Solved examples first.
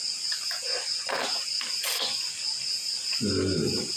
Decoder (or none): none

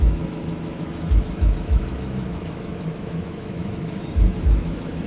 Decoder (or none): autoencoder, DAC-VAE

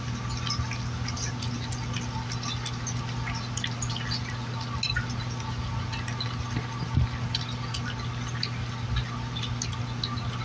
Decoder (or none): none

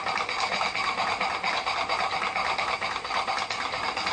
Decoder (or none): none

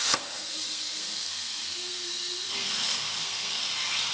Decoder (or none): codec, SNAC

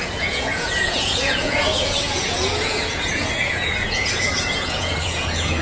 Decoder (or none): vocoder, Vocos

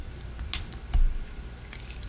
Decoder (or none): none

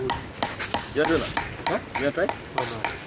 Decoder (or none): none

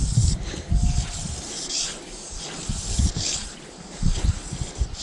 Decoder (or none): none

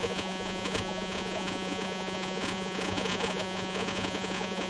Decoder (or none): vocoder, Vocos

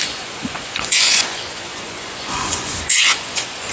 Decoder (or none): vocoder, Vocos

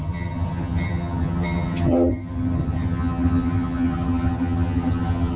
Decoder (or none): vocoder, HiFi-GAN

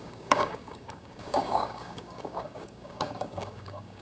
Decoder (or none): codec, DAC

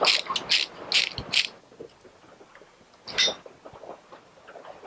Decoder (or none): none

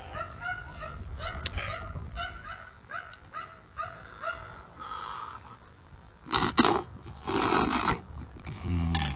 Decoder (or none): vocoder, BigVGAN v2